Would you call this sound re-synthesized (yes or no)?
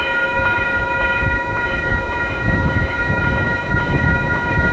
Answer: yes